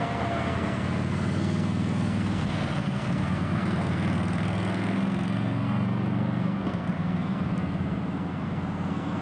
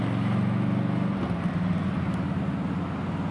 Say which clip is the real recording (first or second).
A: second